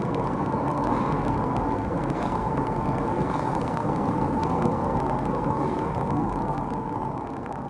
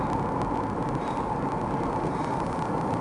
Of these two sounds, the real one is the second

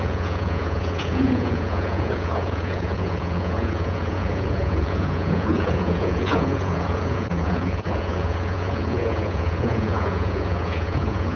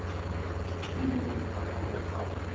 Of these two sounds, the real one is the second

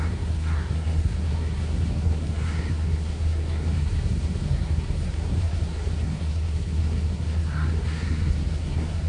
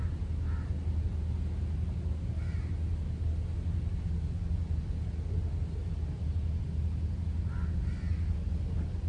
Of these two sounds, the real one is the second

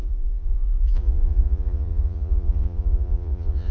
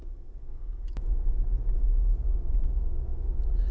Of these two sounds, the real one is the second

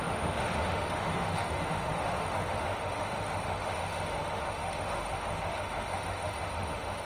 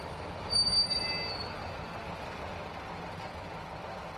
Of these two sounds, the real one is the second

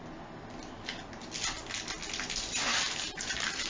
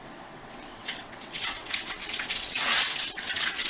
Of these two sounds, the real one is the first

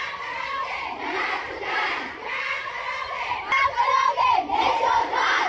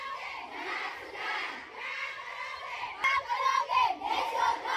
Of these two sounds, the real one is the second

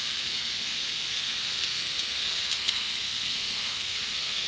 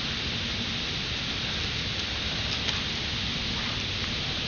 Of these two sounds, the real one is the second